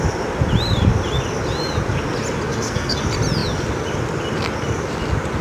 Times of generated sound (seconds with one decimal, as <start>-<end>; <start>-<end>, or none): 2.5-3.0

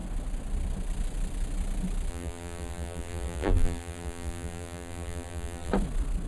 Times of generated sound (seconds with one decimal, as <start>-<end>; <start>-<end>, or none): 2.1-5.7

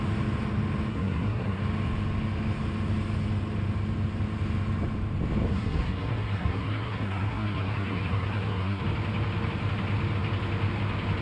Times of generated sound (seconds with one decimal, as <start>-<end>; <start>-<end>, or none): 0.9-1.6; 5.5-8.8

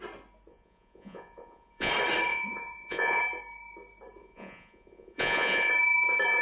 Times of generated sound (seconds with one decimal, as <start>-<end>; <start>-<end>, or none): 0.5-1.9; 2.3-3.2; 4.2-5.7

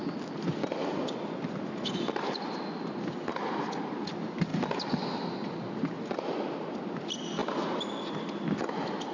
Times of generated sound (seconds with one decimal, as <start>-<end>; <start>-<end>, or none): none

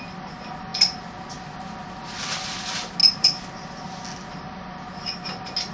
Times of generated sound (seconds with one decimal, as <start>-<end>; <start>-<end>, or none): 3.0-3.7

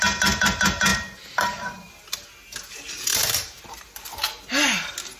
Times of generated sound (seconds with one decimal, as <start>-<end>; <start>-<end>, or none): 0.9-1.9; 3.1-3.6

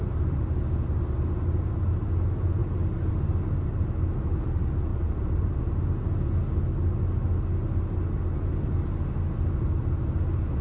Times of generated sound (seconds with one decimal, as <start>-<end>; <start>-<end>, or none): none